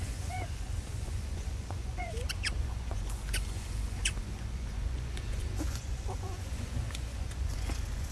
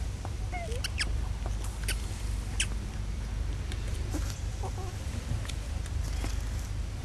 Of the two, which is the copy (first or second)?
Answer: first